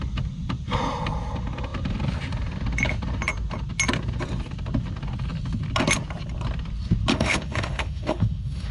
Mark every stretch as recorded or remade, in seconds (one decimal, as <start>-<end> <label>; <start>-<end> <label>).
0.0-7.1 recorded; 7.1-8.7 remade